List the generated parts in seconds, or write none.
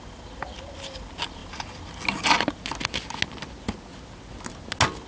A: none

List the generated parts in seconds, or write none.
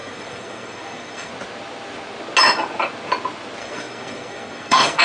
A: 0.0-1.3 (codec, SNAC); 3.6-5.0